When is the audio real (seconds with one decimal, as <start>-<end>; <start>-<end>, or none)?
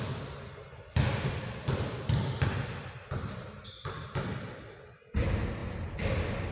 0.0-6.5